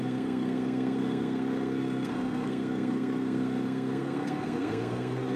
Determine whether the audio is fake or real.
fake